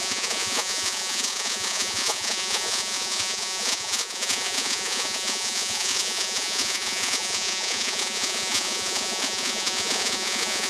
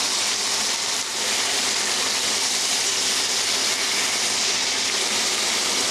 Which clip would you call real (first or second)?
second